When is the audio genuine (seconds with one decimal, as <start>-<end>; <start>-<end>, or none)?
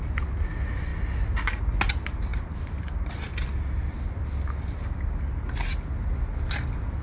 0.0-7.0